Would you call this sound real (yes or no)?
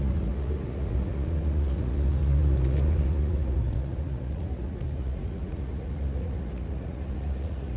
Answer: no